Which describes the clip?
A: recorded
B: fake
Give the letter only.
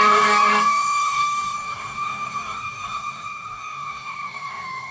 B